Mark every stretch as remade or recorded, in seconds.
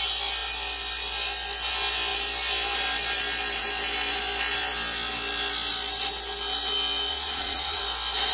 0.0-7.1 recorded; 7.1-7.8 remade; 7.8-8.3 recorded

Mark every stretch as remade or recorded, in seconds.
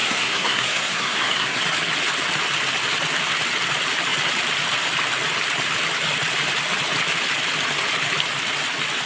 0.0-1.6 remade; 1.6-9.1 recorded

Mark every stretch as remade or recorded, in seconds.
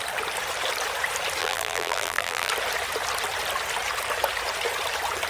0.0-1.4 recorded; 1.4-2.5 remade; 2.5-5.3 recorded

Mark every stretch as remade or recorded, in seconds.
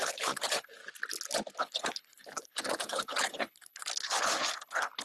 0.0-0.8 remade; 0.8-1.6 recorded; 1.6-5.0 remade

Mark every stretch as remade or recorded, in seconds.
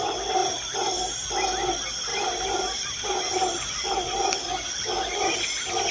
0.0-2.1 recorded; 2.1-5.9 remade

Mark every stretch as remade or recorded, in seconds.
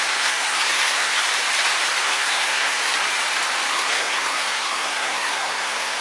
0.0-1.1 remade; 1.1-2.0 recorded; 2.0-2.9 remade; 2.9-3.7 recorded; 3.7-6.0 remade